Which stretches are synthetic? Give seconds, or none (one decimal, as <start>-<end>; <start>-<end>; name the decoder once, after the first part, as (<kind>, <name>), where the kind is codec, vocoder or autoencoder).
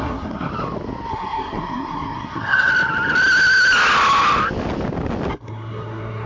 0.0-0.5 (codec, SNAC); 1.1-2.7; 5.3-6.3